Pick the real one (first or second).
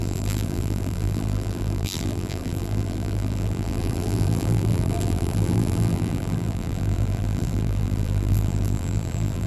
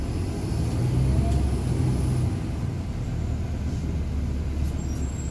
second